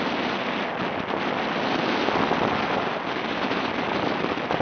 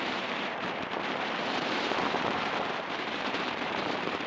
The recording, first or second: first